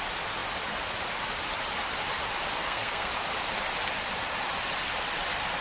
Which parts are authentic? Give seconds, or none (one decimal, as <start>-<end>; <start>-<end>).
0.0-2.6; 3.1-5.6